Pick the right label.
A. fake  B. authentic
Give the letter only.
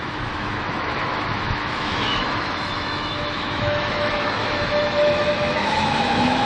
A